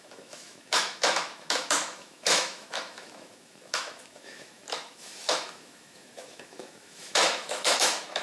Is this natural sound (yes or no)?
no